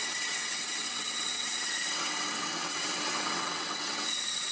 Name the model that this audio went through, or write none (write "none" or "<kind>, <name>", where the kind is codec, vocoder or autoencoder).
vocoder, WaveNeXt